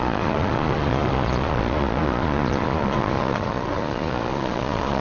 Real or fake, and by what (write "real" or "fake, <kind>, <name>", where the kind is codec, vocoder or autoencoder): fake, vocoder, Vocos